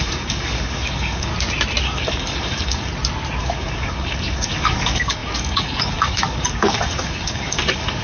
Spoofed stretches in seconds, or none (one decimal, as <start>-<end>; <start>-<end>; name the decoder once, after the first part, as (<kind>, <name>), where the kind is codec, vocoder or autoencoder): 0.0-1.3 (codec, DAC); 1.8-2.9; 3.4-8.0